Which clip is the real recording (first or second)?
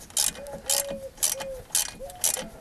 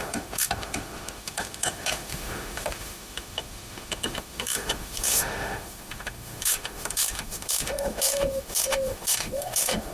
first